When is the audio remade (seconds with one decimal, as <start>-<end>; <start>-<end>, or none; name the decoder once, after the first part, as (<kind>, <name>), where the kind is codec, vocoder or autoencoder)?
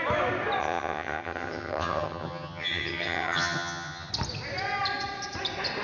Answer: 0.6-4.1 (vocoder, HiFi-GAN)